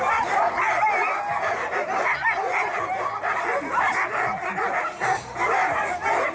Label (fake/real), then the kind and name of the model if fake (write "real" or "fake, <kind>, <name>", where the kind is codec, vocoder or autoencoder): real